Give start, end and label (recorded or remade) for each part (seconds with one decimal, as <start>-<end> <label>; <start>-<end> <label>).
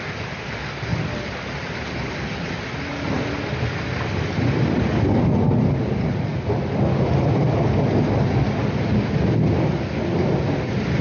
0.0-11.0 recorded